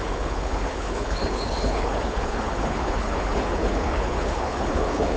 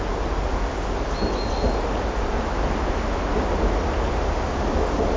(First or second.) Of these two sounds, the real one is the second